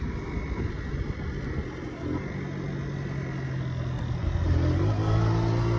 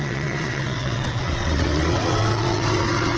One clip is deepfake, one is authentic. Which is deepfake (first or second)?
second